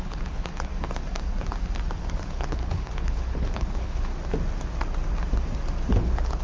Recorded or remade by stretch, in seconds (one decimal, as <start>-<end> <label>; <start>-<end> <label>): 0.0-0.7 remade; 0.7-2.0 recorded; 2.0-4.1 remade; 4.1-5.9 recorded; 5.9-6.4 remade

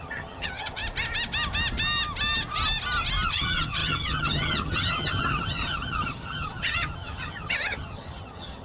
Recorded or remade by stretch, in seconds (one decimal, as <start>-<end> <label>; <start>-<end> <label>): 0.0-0.8 remade; 0.8-3.3 recorded; 3.3-8.6 remade

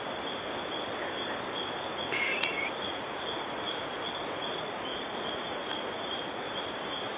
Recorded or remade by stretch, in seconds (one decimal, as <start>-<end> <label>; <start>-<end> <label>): 0.0-2.3 recorded; 2.3-6.6 remade; 6.6-7.2 recorded

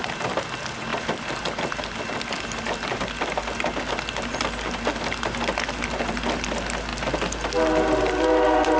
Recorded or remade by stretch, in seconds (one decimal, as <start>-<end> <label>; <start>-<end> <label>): 0.0-0.9 recorded; 0.9-1.8 remade; 1.8-8.8 recorded

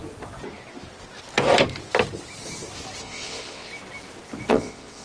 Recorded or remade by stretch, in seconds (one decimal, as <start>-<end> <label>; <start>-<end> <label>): 0.0-3.0 recorded; 3.0-3.7 remade; 3.7-4.5 recorded; 4.5-5.0 remade

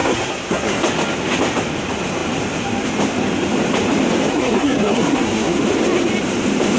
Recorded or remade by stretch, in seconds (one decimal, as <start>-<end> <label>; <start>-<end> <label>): 0.0-0.8 remade; 0.8-4.3 recorded; 4.3-5.6 remade; 5.6-6.8 recorded